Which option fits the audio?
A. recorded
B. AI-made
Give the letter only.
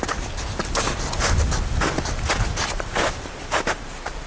A